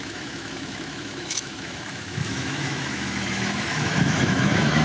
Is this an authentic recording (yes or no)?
no